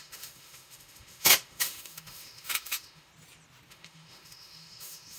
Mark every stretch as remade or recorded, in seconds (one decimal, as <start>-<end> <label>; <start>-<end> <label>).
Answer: 0.0-3.1 remade; 3.1-3.7 recorded; 3.7-5.2 remade